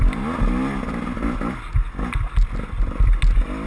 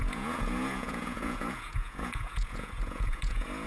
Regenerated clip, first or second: second